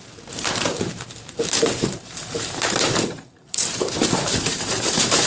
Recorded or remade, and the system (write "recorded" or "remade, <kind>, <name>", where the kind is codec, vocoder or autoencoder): remade, vocoder, BigVGAN v2